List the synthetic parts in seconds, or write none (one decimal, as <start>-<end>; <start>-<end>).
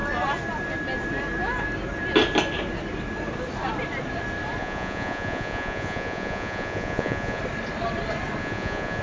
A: 4.6-7.4; 8.4-9.0